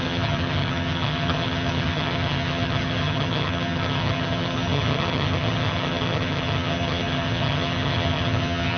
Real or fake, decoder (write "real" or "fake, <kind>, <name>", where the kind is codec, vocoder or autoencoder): fake, vocoder, HiFi-GAN